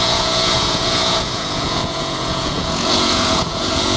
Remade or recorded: remade